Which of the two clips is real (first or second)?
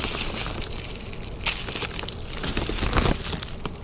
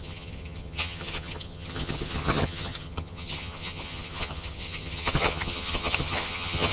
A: first